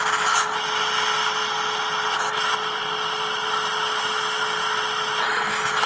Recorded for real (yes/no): yes